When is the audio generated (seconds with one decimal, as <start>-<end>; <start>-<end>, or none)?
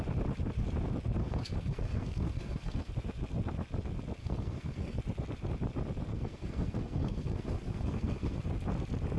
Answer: 1.2-2.9; 4.2-5.0; 6.1-8.4